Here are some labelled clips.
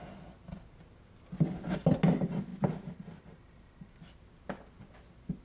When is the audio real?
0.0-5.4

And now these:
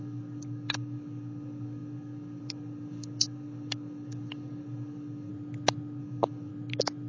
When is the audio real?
5.3-6.0; 6.5-7.1

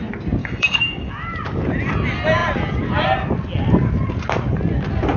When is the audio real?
0.0-0.4; 1.1-5.2

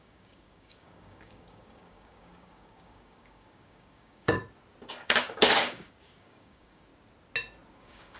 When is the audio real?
4.4-4.9; 6.9-7.7

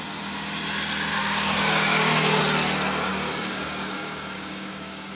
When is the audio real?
0.0-1.1; 2.4-3.1

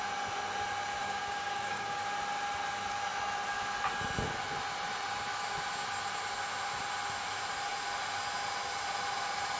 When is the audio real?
0.0-1.0; 2.0-9.6

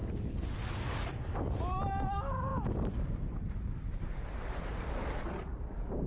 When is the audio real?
0.0-6.1